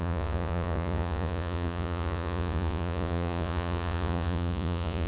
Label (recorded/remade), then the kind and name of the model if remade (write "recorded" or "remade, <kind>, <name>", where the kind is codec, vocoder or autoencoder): remade, vocoder, Vocos